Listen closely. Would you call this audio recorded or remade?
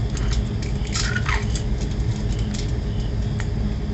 recorded